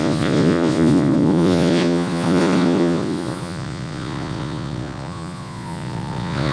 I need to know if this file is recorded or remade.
remade